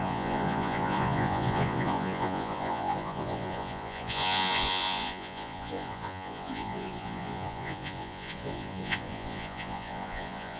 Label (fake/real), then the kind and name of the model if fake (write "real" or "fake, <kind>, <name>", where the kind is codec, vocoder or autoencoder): fake, vocoder, Vocos